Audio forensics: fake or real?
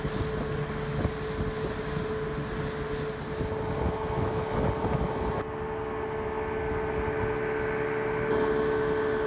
real